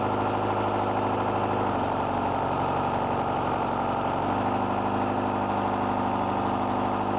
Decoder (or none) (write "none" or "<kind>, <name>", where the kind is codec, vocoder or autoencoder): none